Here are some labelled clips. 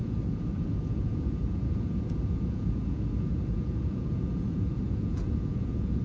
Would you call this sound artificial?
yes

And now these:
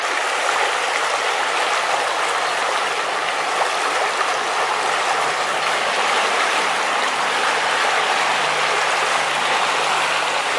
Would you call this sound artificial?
no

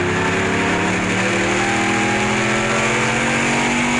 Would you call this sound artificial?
no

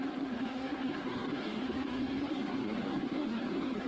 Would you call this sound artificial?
yes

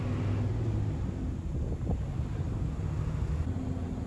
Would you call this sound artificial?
no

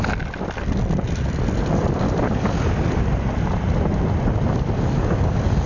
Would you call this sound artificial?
no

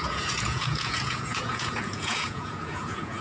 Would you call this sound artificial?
yes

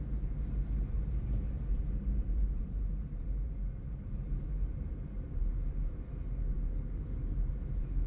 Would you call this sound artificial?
yes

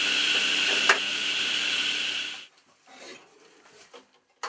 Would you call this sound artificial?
no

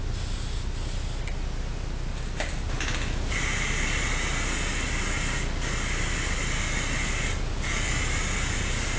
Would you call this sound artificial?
no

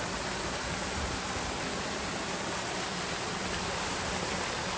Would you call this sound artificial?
no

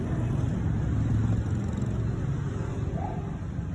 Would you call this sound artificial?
no